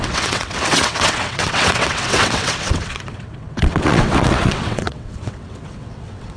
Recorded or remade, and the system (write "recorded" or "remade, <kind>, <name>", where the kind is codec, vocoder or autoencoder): remade, vocoder, WaveNeXt